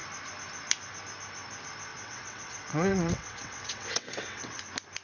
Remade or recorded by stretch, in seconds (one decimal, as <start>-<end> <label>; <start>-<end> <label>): 0.0-1.9 recorded; 1.9-4.6 remade; 4.6-5.0 recorded